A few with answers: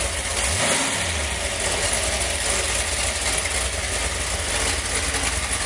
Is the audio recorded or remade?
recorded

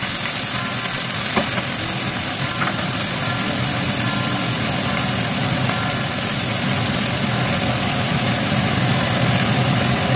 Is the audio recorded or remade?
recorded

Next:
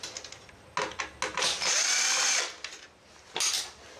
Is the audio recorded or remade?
recorded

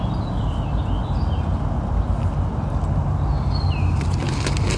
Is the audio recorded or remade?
recorded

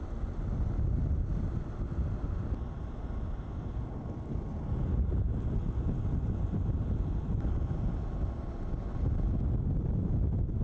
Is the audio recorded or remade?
recorded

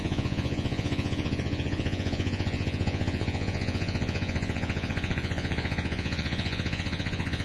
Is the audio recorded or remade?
remade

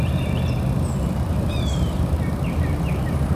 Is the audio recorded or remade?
remade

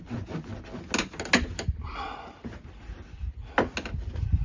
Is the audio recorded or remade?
recorded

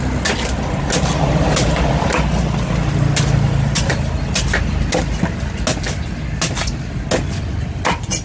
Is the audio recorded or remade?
recorded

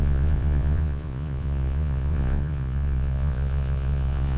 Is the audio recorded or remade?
remade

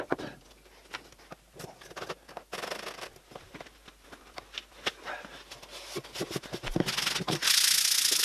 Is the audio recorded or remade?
recorded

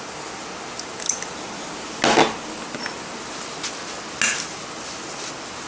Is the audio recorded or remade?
recorded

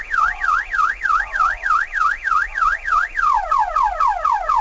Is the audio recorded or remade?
remade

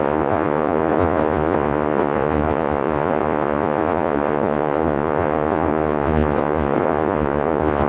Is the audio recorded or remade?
remade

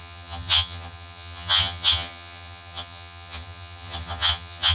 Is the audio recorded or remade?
remade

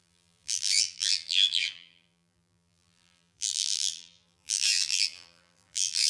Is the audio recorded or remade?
remade